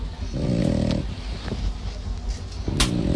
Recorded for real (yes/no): yes